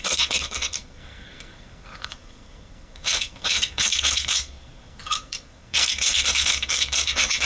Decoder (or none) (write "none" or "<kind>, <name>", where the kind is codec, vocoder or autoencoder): codec, SNAC